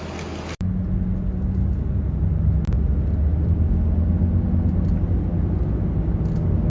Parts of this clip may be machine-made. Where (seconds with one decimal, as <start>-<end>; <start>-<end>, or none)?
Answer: none